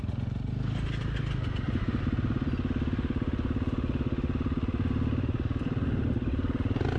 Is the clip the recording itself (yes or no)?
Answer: yes